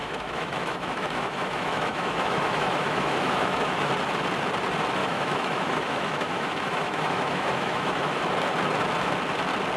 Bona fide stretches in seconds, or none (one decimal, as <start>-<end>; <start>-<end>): 3.9-5.0; 8.2-9.8